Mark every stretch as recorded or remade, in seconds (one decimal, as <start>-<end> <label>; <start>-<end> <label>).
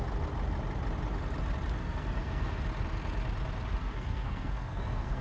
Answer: 0.0-1.8 recorded; 1.8-2.6 remade; 2.6-3.8 recorded; 3.8-5.2 remade